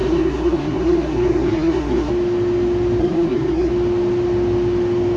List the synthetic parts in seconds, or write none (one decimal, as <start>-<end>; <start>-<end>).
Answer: 0.0-2.1; 3.0-3.7